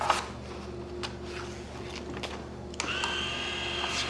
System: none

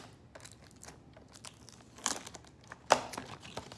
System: none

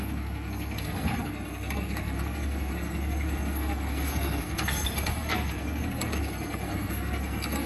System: codec, SNAC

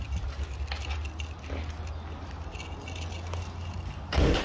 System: none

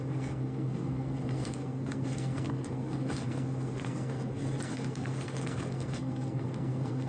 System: codec, SNAC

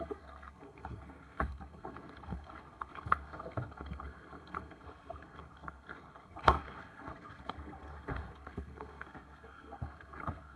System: codec, SNAC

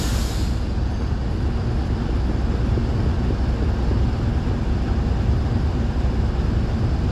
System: none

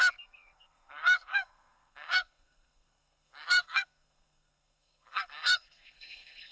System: codec, SNAC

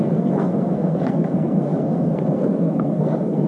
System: codec, SNAC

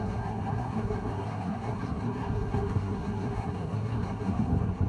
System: codec, SNAC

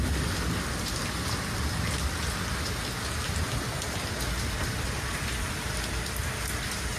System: none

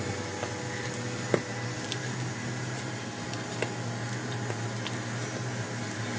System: none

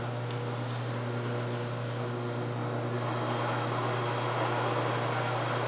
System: none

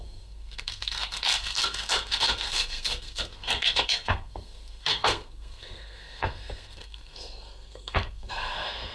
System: codec, SNAC